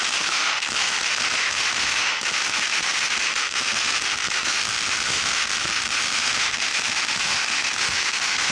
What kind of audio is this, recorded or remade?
remade